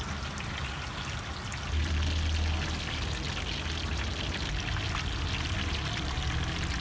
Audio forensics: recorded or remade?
recorded